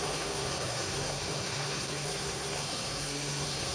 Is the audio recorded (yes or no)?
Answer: no